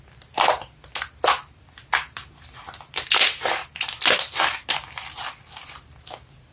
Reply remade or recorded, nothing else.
recorded